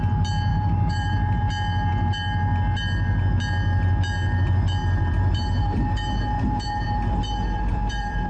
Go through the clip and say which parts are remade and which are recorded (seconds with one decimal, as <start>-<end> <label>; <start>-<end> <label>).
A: 0.0-0.5 recorded; 0.5-1.4 remade; 1.4-4.8 recorded; 4.8-8.3 remade